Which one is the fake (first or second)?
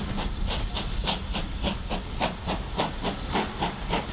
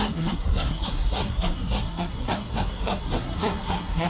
second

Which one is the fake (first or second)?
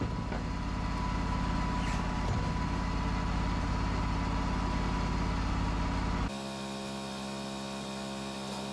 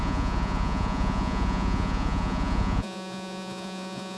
second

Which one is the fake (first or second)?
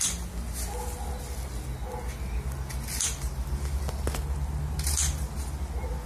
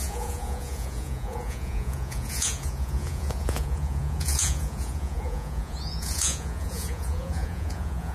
second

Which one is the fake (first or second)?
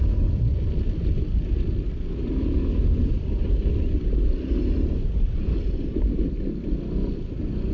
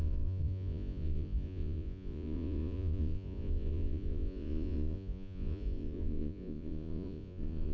second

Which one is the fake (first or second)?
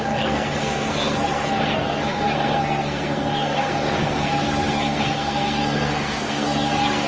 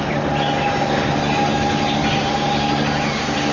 first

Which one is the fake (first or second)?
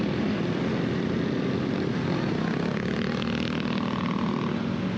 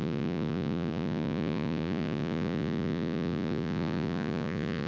second